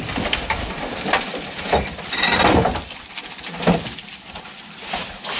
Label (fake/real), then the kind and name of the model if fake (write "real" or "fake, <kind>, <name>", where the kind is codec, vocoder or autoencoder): real